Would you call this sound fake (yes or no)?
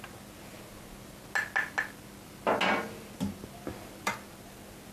no